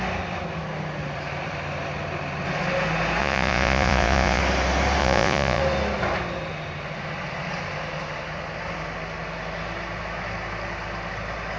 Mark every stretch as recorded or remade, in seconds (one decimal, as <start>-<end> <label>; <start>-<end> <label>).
0.0-3.2 recorded; 3.2-4.4 remade; 4.4-5.0 recorded; 5.0-5.6 remade; 5.6-11.6 recorded